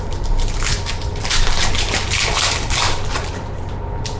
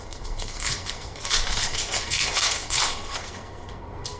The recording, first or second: first